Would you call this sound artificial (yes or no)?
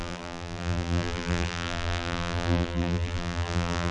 yes